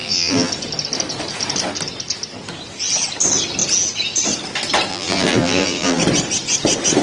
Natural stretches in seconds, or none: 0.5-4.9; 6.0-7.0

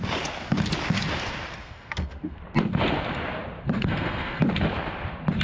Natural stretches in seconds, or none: 0.0-1.6; 2.4-3.6; 4.4-5.4

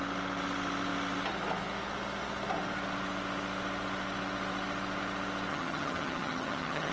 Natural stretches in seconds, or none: 0.0-5.5

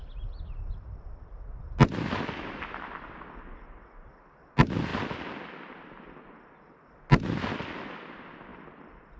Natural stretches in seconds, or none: 0.0-9.2

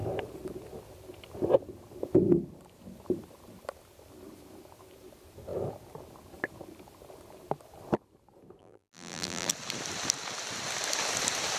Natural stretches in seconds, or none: 0.0-8.6; 9.5-11.6

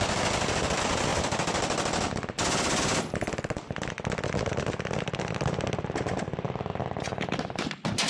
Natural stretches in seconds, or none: 0.0-8.1

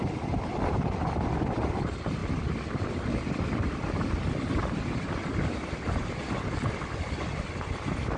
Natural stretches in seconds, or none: 0.0-8.2

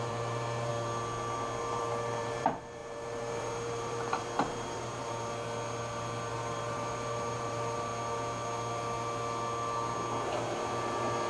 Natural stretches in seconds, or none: 0.7-1.6; 5.2-6.3; 7.9-11.3